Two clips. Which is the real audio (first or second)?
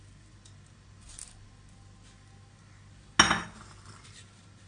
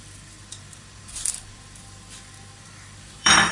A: first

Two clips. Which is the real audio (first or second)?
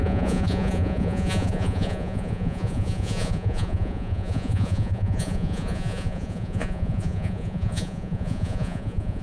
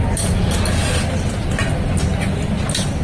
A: second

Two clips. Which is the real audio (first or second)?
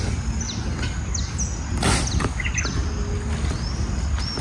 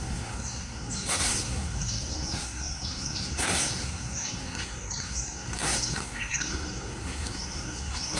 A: first